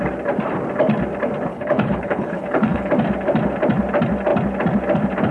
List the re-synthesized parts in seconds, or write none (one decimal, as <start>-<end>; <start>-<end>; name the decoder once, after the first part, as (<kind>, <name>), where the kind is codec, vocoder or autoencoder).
1.5-2.9 (codec, HILCodec)